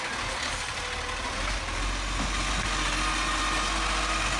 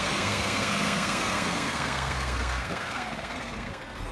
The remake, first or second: second